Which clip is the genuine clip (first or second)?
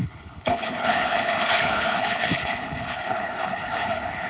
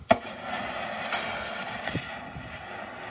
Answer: second